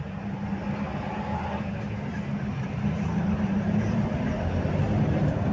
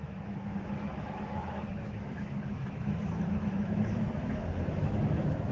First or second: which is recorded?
first